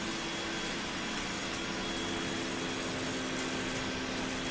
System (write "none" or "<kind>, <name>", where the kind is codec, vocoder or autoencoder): none